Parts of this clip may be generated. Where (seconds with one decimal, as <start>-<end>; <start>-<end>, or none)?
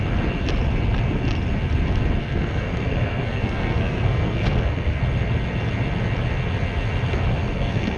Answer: 2.2-5.0; 7.4-8.0